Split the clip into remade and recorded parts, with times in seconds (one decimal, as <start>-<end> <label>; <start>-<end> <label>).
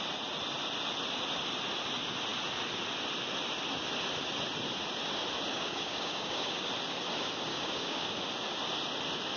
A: 0.0-5.5 recorded; 5.5-6.7 remade; 6.7-7.5 recorded; 7.5-8.1 remade; 8.1-9.4 recorded